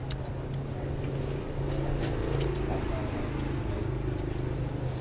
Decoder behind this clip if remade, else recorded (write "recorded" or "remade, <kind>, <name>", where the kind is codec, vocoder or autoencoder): recorded